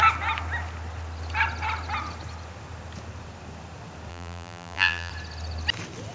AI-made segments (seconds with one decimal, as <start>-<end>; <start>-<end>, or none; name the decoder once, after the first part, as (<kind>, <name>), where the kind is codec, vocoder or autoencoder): 4.1-5.1 (vocoder, BigVGAN v2)